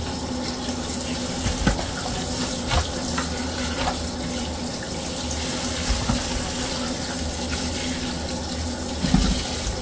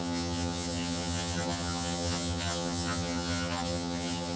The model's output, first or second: second